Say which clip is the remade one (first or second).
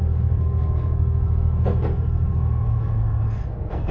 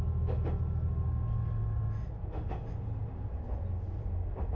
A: first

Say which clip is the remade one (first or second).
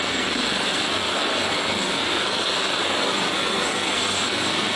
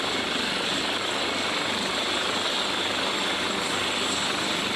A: first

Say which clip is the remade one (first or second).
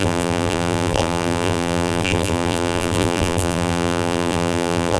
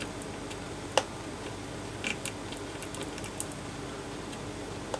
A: first